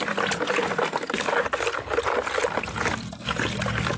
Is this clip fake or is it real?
real